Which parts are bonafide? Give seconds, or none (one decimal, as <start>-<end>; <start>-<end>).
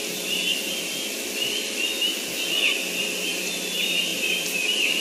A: 0.0-3.0